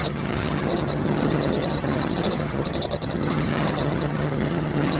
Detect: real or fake fake